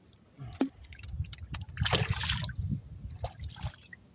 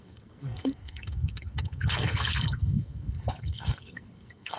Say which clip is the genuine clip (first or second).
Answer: first